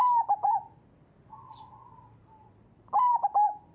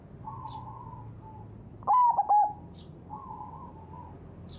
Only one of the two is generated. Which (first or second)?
first